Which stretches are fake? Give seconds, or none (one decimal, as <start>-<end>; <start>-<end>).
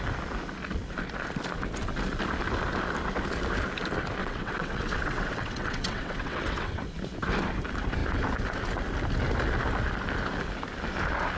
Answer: 4.2-6.8